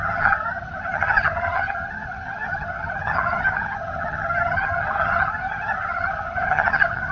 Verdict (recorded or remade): remade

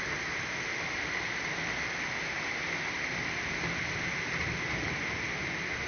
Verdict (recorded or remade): recorded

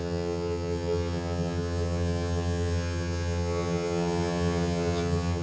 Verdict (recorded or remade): remade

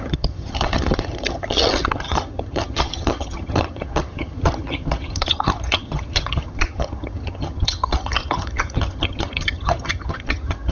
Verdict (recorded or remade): remade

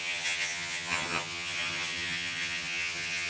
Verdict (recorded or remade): remade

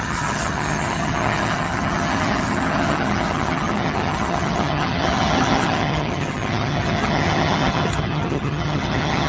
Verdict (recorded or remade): remade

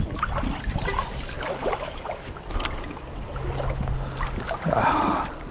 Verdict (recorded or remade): recorded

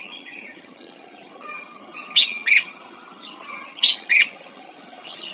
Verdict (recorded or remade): remade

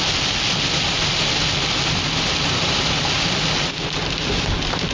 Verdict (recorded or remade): recorded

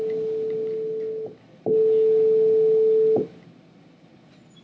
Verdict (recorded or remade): recorded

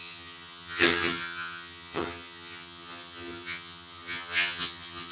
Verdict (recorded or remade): remade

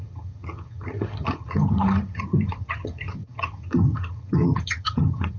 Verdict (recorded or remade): remade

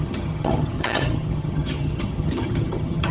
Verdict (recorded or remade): remade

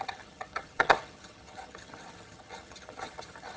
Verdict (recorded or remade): remade